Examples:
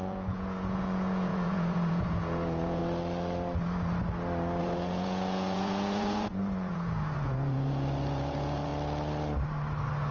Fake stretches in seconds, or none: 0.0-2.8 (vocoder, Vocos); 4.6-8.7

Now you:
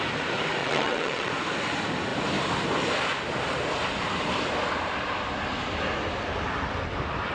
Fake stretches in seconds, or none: 0.6-1.3 (vocoder, WaveNeXt)